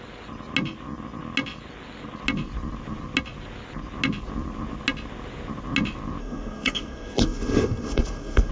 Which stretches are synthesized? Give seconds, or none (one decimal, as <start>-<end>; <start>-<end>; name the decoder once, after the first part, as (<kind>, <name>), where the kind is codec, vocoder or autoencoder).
6.2-8.5 (codec, SNAC)